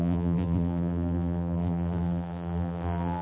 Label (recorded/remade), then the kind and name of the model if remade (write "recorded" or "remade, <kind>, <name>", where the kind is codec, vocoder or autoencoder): remade, vocoder, BigVGAN v2